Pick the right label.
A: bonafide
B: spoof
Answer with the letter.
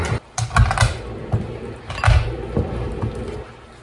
A